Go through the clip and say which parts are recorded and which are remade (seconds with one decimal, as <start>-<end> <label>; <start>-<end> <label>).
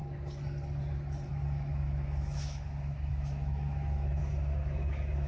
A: 0.0-1.3 recorded; 1.3-5.3 remade